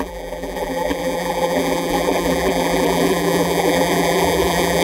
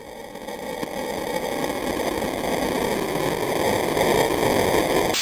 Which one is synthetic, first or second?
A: first